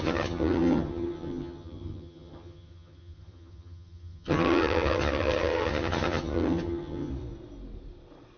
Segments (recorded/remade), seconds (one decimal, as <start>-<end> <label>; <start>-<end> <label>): 0.0-7.1 remade; 7.1-8.4 recorded